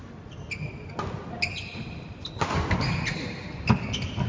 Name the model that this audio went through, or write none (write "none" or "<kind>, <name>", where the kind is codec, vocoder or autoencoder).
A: none